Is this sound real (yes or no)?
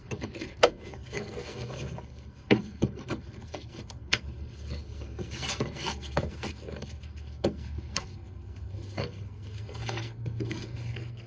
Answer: no